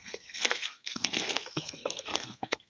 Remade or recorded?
remade